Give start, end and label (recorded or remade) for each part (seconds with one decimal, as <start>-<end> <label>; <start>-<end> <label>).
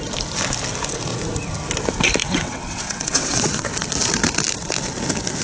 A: 0.0-2.2 recorded; 2.2-3.7 remade; 3.7-5.4 recorded